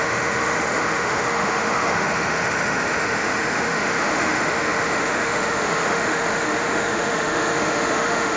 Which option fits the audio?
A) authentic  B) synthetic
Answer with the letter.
B